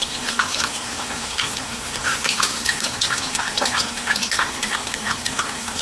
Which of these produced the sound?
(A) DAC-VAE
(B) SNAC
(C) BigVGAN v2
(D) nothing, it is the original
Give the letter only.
B